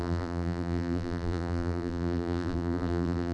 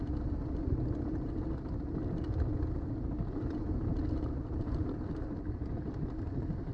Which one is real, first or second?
second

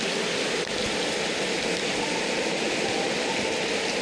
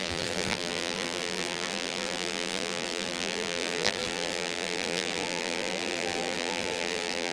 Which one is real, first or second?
first